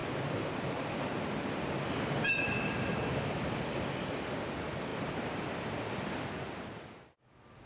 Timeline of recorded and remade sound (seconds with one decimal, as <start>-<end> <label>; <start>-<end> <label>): 0.0-4.9 remade; 4.9-5.4 recorded; 5.4-7.7 remade